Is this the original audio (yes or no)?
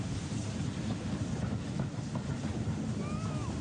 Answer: yes